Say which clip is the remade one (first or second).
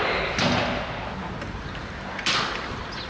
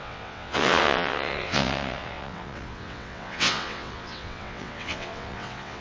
second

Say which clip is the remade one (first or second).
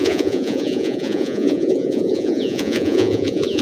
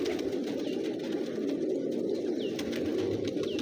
first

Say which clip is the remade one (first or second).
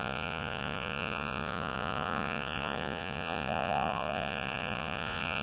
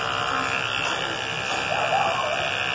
first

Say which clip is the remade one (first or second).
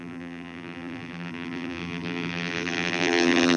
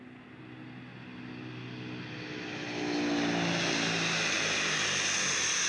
first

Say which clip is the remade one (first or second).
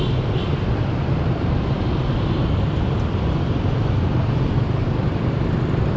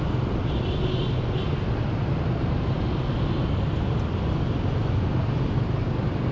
first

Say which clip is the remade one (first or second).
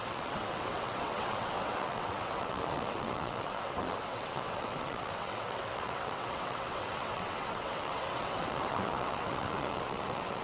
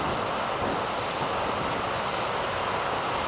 first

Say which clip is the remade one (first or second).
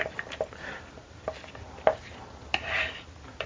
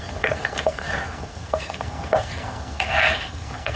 second